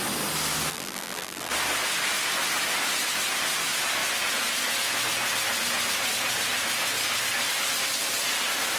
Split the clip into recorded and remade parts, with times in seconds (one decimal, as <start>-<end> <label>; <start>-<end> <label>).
0.0-0.7 recorded; 0.7-1.5 remade; 1.5-8.8 recorded